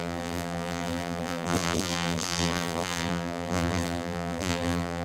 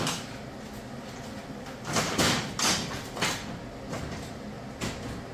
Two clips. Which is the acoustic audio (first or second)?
second